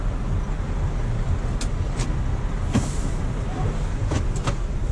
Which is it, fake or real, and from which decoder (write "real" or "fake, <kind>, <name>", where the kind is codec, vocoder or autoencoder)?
real